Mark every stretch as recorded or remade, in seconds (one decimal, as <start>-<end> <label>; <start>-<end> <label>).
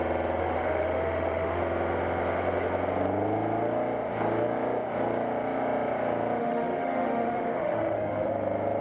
0.0-0.4 recorded; 0.4-1.6 remade; 1.6-6.4 recorded; 6.4-8.3 remade; 8.3-8.8 recorded